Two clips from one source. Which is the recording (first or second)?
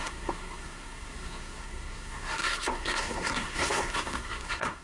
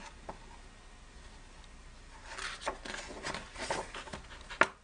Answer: second